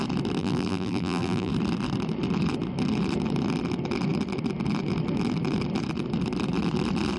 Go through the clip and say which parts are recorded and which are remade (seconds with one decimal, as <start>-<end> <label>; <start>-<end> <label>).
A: 0.0-0.4 recorded; 0.4-1.5 remade; 1.5-7.2 recorded